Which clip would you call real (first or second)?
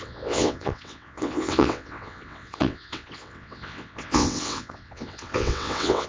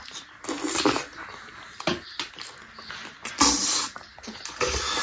second